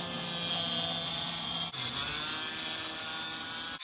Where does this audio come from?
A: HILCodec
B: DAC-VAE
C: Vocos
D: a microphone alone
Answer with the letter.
D